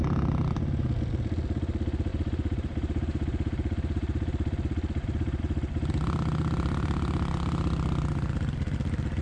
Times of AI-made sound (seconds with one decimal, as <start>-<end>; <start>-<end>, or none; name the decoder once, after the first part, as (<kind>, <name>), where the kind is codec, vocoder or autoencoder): 2.1-5.4 (vocoder, BigVGAN v2)